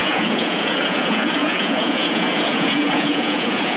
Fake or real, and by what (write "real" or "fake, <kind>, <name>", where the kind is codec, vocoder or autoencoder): fake, vocoder, Vocos